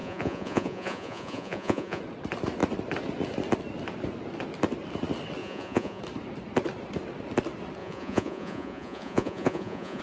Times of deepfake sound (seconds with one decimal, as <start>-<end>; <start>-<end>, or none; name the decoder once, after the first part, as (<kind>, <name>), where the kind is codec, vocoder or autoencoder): 0.0-2.0 (vocoder, Vocos); 5.4-6.0; 7.8-10.0